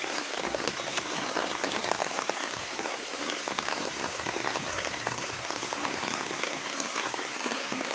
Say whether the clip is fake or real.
fake